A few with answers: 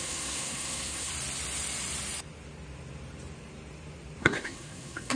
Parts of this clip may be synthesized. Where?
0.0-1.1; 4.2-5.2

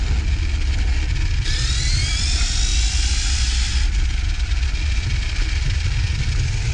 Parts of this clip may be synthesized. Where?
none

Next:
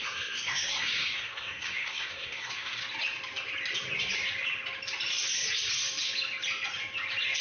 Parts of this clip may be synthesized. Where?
0.0-2.8

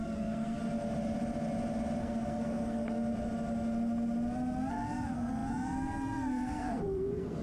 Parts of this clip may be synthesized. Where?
0.0-0.6; 2.0-3.0; 4.7-7.4